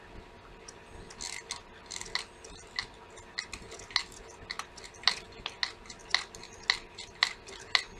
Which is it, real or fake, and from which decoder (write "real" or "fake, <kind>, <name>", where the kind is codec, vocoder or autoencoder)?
real